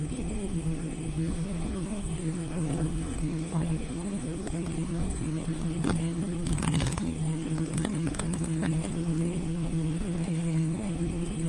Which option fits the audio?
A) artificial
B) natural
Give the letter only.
A